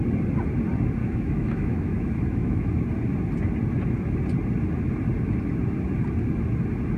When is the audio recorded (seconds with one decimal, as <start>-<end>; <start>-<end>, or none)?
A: 0.0-1.0; 2.7-7.0